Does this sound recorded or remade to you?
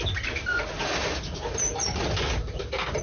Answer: recorded